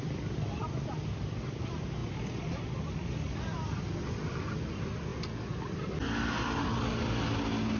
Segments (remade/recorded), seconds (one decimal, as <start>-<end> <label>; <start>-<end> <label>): 0.0-7.8 recorded